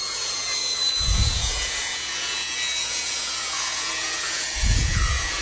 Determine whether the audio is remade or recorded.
remade